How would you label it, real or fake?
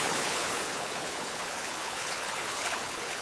fake